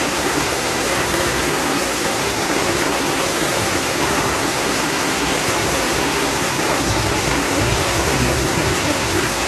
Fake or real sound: fake